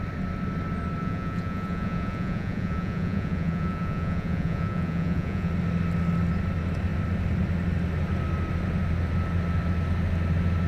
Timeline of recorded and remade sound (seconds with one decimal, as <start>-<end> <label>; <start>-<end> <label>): 0.0-1.0 recorded; 1.0-5.5 remade; 5.5-10.7 recorded